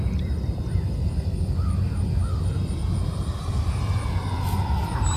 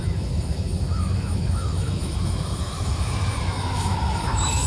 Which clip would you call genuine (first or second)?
first